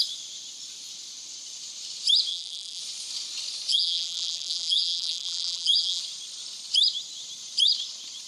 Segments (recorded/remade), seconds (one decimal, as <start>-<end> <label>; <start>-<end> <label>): 0.0-2.3 recorded; 2.3-2.8 remade; 2.8-3.7 recorded; 3.7-6.0 remade; 6.0-8.3 recorded